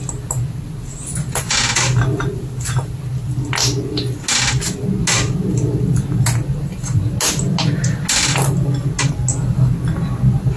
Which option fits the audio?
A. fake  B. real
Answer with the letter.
B